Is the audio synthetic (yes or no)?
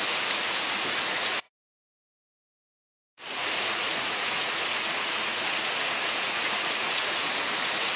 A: yes